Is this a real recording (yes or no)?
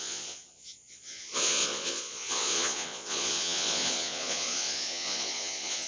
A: no